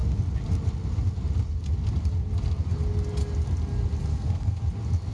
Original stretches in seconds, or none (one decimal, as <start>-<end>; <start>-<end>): 0.0-4.1; 4.6-5.1